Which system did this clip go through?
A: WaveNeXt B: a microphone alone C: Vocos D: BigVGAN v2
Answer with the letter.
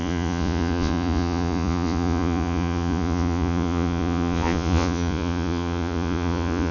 C